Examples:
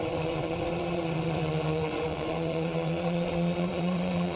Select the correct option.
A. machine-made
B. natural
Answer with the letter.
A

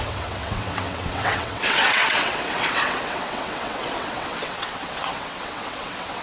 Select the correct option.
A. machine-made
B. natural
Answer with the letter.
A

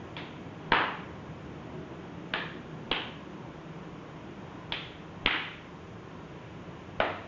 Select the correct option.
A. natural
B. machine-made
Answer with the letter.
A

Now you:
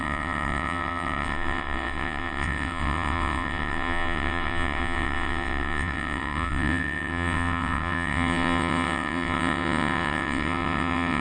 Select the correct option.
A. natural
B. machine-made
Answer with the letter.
B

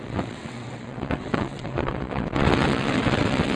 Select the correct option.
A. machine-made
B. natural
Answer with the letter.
A